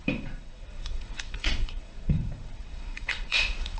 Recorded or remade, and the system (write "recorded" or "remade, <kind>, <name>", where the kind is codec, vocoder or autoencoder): remade, vocoder, Vocos